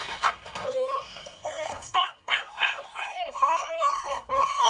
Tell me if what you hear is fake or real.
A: fake